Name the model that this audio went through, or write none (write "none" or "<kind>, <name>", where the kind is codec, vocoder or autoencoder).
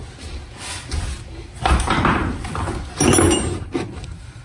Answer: none